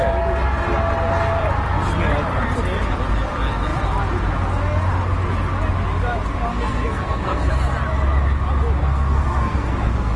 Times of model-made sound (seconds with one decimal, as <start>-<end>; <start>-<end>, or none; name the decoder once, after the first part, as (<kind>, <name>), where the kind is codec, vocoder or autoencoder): 6.5-7.5 (codec, SNAC); 8.8-10.2